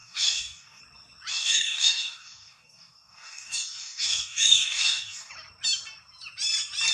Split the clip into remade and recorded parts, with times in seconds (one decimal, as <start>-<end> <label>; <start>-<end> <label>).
0.0-0.8 remade; 0.8-1.3 recorded; 1.3-5.3 remade; 5.3-6.9 recorded